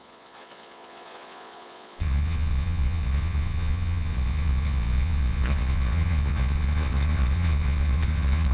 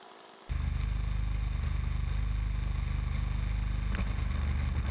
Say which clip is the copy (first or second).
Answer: first